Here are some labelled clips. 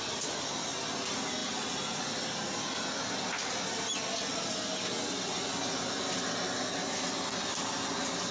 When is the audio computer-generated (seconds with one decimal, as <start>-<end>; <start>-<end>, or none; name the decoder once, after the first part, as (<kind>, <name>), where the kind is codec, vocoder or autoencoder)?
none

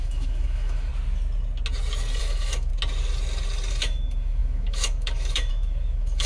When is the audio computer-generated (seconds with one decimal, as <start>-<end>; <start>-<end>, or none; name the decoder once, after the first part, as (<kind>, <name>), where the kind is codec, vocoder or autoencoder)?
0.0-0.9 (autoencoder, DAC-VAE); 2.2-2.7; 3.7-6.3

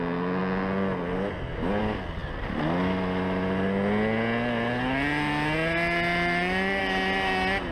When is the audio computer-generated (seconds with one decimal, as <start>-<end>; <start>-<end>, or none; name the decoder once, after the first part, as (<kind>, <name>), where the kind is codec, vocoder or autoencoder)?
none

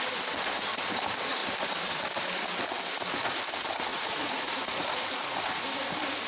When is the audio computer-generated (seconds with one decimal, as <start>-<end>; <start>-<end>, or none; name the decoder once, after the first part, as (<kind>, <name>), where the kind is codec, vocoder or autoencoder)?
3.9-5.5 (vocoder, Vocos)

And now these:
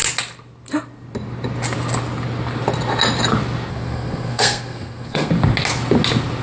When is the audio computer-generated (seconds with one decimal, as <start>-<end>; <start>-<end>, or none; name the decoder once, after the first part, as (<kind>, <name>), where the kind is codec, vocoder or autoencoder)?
3.7-5.3 (codec, SNAC)

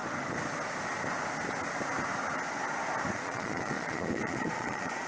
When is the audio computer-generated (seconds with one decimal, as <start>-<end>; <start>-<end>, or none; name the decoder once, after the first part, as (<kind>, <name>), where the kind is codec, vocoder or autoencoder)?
3.1-5.1 (vocoder, Vocos)

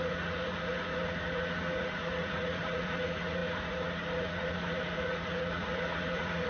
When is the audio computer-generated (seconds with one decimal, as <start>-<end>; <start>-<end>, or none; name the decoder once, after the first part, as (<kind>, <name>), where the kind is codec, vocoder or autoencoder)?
0.0-6.5 (vocoder, Vocos)